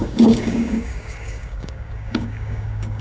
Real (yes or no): no